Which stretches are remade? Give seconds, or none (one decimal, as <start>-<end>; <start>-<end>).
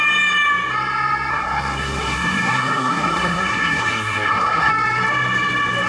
1.3-4.7